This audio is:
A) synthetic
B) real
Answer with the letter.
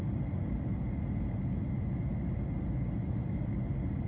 B